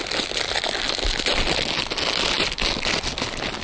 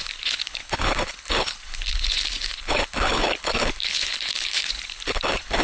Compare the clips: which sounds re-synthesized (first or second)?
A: second